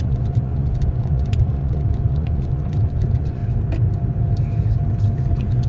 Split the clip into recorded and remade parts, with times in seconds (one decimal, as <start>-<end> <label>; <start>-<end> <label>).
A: 0.0-3.4 remade; 3.4-5.2 recorded; 5.2-5.7 remade